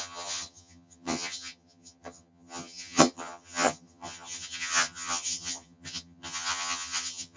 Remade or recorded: remade